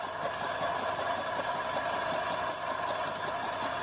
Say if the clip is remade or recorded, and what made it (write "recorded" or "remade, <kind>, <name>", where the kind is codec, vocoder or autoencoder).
recorded